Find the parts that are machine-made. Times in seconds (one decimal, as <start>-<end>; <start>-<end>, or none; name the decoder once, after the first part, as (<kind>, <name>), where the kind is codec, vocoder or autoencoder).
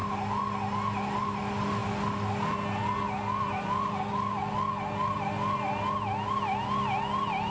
none